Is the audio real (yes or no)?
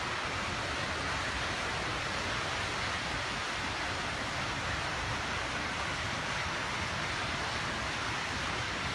yes